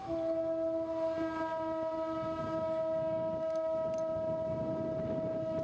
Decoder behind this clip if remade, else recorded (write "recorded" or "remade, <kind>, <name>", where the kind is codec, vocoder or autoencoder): recorded